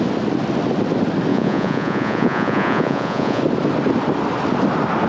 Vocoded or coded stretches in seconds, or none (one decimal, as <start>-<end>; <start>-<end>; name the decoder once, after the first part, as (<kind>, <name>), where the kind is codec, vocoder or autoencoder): 1.3-3.4 (vocoder, Vocos)